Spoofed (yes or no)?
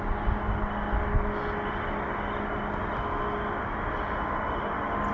no